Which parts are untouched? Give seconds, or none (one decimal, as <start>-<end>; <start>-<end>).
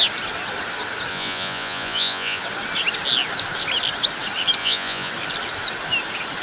0.0-1.1; 2.4-4.6; 5.1-6.4